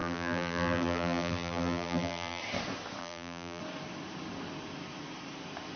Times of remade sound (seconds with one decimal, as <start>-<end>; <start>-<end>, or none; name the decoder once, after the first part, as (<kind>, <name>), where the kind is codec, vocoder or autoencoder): 0.0-2.4 (vocoder, BigVGAN v2); 3.0-3.6